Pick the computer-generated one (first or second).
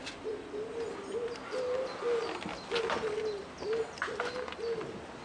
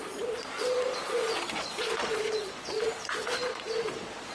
second